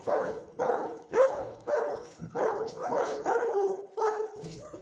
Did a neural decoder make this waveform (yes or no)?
yes